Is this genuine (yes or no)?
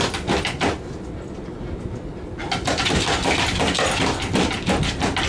yes